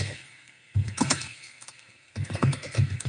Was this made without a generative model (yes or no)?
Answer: no